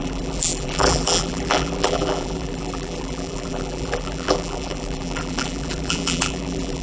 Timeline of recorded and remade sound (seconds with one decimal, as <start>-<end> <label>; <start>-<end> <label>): 0.0-6.8 remade